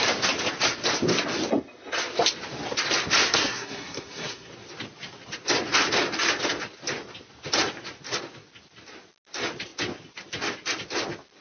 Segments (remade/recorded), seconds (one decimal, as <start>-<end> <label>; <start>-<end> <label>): 0.0-3.3 recorded; 3.3-4.5 remade; 4.5-11.4 recorded